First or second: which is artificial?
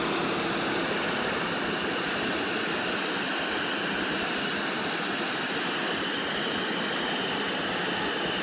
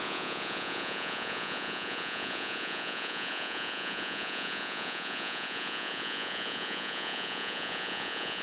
second